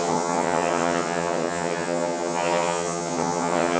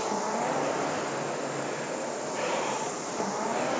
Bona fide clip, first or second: second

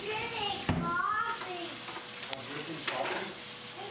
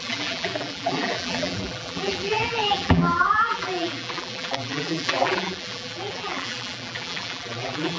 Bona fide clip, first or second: first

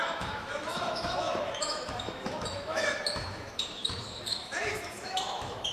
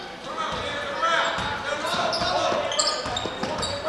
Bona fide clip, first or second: second